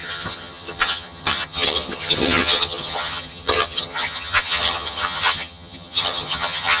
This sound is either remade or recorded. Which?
remade